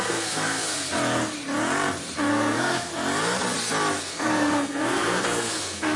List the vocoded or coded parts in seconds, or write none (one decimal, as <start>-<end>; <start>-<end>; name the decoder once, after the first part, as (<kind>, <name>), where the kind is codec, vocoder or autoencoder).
0.0-0.9 (codec, SNAC); 2.3-2.9; 4.0-6.0